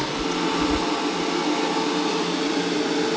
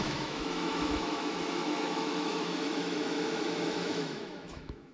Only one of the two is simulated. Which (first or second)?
second